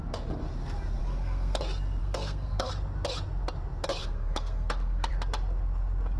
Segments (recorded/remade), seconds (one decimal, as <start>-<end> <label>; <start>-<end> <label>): 0.0-1.0 recorded; 1.0-1.6 remade; 1.6-2.0 recorded; 2.0-2.7 remade; 2.7-4.0 recorded; 4.0-5.1 remade; 5.1-6.2 recorded